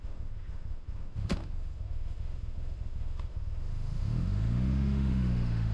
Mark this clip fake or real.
fake